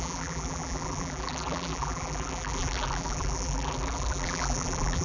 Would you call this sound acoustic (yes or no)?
no